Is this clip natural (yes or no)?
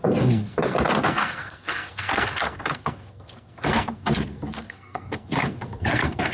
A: no